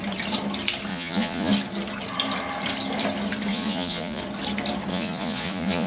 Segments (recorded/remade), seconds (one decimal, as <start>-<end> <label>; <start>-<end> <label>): 0.0-0.9 recorded; 0.9-1.5 remade; 1.5-3.5 recorded; 3.5-4.2 remade; 4.2-4.9 recorded; 4.9-5.9 remade